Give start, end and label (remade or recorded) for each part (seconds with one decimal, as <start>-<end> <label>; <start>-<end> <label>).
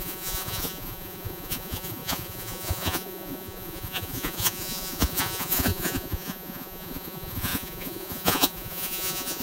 0.0-9.4 remade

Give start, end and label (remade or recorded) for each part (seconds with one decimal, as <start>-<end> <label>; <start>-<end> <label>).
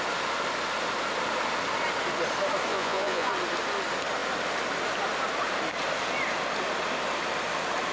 0.0-2.7 recorded; 2.7-3.3 remade; 3.3-7.9 recorded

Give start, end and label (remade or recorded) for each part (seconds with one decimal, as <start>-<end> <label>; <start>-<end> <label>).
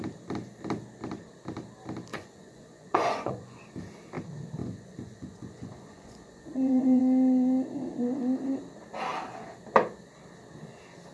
0.0-2.1 recorded; 2.1-3.6 remade; 3.6-4.6 recorded; 4.6-7.0 remade; 7.0-11.1 recorded